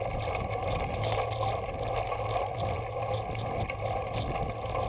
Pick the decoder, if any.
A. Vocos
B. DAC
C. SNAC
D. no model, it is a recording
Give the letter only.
D